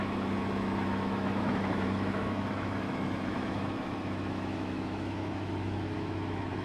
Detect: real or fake fake